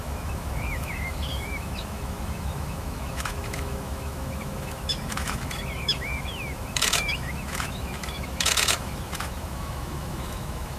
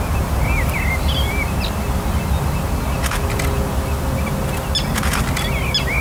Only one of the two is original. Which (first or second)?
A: second